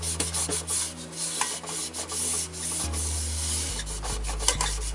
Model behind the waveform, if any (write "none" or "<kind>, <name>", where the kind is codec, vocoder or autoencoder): none